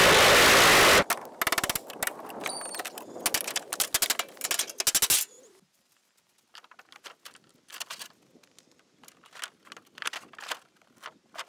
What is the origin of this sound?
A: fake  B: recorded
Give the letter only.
B